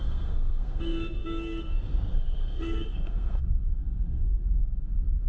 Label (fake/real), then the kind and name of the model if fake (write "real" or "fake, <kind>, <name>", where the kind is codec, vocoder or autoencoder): fake, codec, SNAC